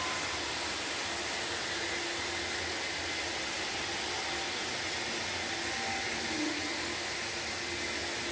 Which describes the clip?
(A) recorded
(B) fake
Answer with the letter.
A